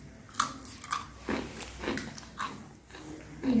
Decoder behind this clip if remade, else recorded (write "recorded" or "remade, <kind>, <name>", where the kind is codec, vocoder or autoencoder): recorded